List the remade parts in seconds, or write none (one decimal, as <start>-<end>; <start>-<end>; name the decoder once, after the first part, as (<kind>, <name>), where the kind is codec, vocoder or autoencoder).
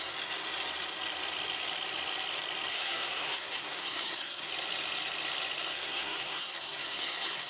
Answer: 2.7-4.5 (codec, SNAC); 5.7-7.5